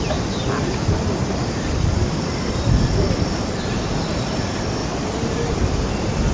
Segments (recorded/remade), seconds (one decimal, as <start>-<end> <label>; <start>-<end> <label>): 0.0-0.4 recorded; 0.4-3.7 remade; 3.7-4.8 recorded; 4.8-5.4 remade; 5.4-6.3 recorded